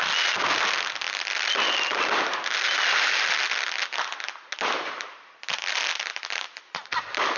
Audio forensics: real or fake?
real